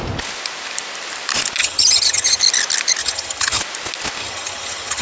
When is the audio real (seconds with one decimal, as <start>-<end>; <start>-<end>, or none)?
0.0-1.6; 2.4-3.0; 3.6-4.2